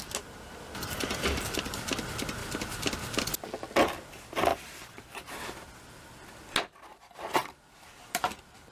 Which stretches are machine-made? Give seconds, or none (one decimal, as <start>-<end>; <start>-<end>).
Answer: 4.5-5.3; 6.9-8.7